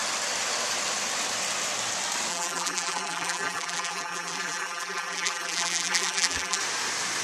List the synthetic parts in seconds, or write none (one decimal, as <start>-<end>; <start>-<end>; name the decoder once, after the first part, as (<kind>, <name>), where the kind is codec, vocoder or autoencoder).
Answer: 2.3-6.6 (vocoder, BigVGAN v2)